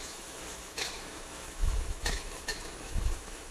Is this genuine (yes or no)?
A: no